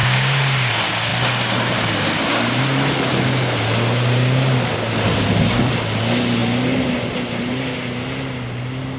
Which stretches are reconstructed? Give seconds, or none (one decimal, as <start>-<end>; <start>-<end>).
0.0-0.7